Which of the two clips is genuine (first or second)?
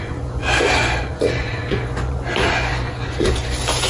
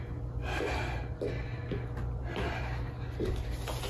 second